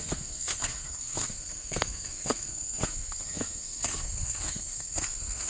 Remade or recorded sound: remade